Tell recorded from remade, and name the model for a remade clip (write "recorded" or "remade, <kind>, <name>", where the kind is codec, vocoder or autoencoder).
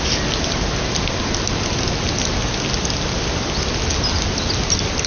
recorded